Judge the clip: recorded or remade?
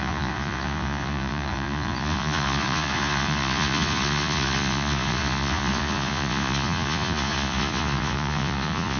remade